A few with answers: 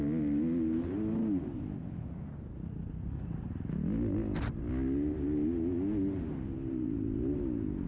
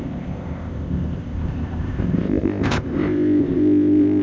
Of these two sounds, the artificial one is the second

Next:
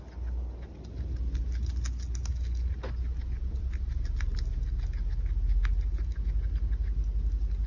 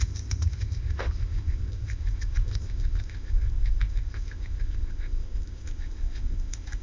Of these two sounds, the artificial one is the second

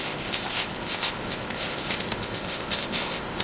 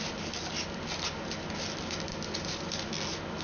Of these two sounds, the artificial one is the first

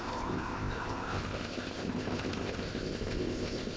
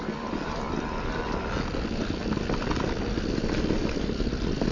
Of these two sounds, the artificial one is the first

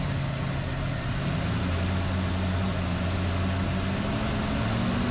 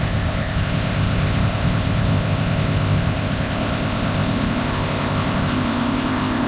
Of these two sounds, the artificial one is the second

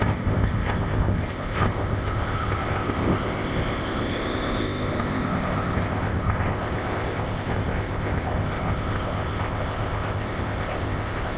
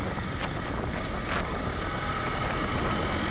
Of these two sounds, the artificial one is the first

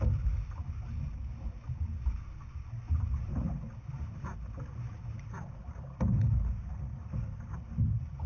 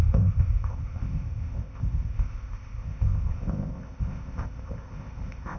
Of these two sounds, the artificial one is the second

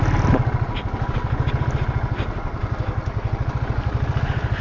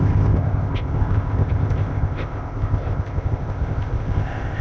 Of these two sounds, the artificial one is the second